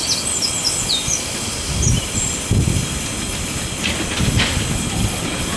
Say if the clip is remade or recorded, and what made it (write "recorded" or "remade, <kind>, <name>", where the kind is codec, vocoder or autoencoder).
recorded